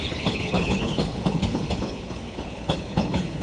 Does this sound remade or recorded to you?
remade